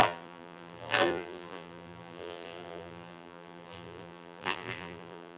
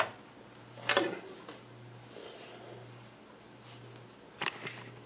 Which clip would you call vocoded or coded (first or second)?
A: first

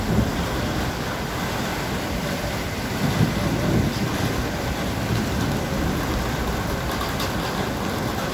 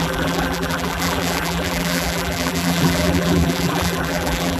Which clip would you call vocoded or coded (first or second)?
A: second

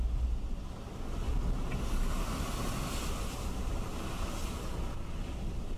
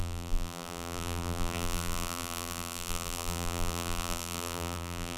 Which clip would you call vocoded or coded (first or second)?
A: second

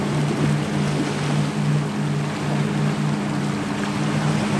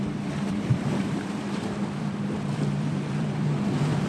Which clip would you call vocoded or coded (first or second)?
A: second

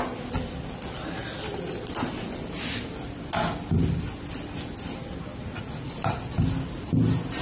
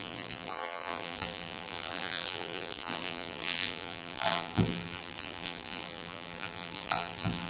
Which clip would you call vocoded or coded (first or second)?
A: second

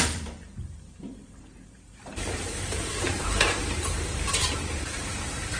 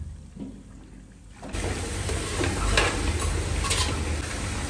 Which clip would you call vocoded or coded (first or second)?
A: first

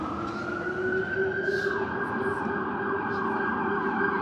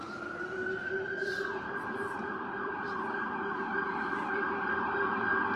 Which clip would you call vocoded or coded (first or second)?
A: second